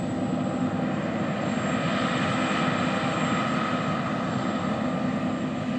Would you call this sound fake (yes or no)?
no